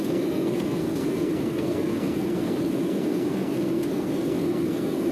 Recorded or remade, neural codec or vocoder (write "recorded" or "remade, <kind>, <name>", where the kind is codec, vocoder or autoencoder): remade, codec, SNAC